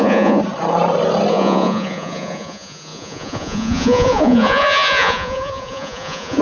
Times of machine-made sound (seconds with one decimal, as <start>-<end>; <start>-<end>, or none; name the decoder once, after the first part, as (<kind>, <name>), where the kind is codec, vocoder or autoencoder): 0.0-0.4 (vocoder, Vocos); 1.3-6.4